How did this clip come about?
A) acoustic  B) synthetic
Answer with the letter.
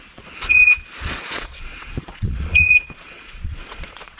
B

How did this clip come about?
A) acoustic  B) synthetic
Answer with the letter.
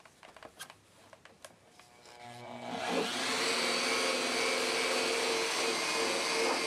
A